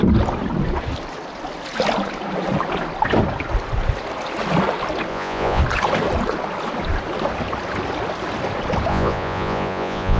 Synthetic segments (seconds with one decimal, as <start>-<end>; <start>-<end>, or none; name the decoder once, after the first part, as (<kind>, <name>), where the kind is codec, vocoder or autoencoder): 5.1-5.6 (vocoder, Vocos); 8.9-10.2